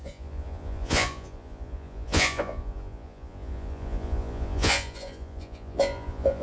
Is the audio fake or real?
fake